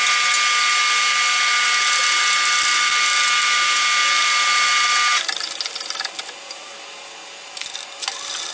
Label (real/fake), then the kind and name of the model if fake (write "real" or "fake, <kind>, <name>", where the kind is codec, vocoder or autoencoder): real